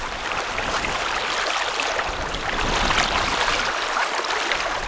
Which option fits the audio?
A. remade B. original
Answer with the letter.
B